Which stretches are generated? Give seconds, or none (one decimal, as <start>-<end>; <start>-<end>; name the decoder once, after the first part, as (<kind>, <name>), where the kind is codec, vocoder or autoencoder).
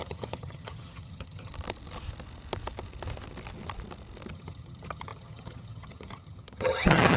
0.0-1.5 (vocoder, HiFi-GAN); 4.3-7.2